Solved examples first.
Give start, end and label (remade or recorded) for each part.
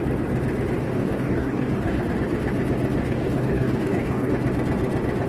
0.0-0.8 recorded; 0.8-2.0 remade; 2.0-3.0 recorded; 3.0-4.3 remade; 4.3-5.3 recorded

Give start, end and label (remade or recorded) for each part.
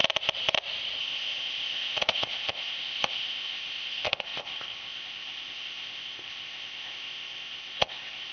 0.0-1.0 recorded; 1.0-8.3 remade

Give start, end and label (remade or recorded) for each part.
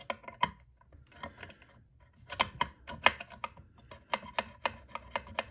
0.0-5.5 recorded